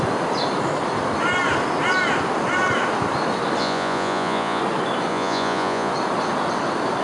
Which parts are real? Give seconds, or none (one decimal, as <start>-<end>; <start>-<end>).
0.0-3.6; 4.6-5.1; 5.9-7.0